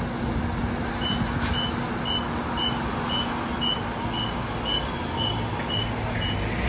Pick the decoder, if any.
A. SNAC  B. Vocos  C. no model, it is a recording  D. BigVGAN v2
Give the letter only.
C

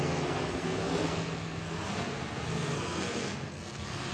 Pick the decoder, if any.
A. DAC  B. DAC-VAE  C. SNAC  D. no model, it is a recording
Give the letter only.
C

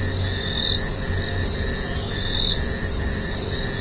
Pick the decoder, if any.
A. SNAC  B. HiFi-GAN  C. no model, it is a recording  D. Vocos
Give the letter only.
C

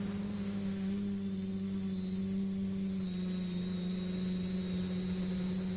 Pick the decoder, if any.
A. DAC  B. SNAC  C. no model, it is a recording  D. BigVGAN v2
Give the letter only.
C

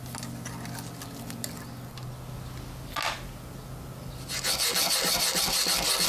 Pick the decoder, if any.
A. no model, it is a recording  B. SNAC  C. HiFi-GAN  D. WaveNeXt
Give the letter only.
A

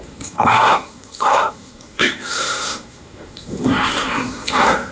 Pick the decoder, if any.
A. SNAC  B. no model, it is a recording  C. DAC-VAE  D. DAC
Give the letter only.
A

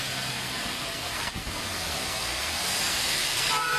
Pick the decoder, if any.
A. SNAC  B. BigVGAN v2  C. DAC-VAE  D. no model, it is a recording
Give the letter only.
A